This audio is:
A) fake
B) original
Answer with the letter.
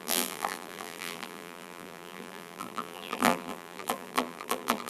A